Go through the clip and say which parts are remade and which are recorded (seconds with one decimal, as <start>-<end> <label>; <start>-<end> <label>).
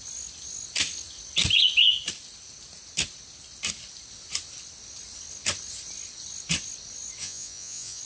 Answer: 0.0-7.2 recorded; 7.2-8.0 remade